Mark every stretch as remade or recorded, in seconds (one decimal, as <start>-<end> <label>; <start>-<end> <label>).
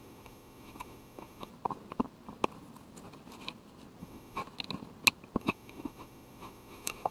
0.0-1.5 remade; 1.5-4.0 recorded; 4.0-4.4 remade; 4.4-5.4 recorded; 5.4-7.1 remade